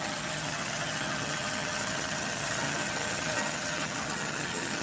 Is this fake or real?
fake